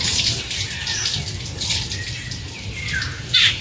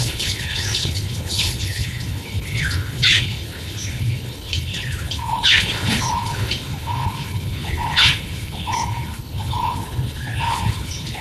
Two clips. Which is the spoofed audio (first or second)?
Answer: second